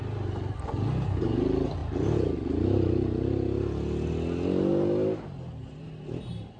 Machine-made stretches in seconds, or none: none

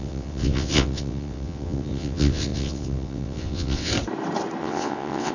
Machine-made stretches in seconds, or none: 0.0-3.9 (vocoder, WaveNeXt); 4.6-5.3

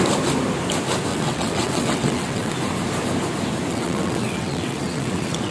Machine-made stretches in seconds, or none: 1.1-2.5 (vocoder, WaveNeXt); 3.7-5.5

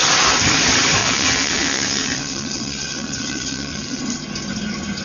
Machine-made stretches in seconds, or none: 1.0-4.0 (vocoder, WaveNeXt)